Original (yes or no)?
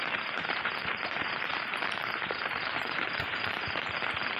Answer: no